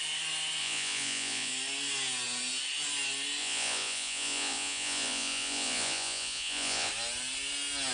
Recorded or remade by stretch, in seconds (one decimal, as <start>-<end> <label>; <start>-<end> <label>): 0.0-0.6 recorded; 0.6-1.5 remade; 1.5-3.4 recorded; 3.4-6.9 remade; 6.9-7.9 recorded